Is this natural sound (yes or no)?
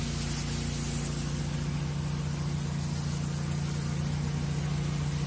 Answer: yes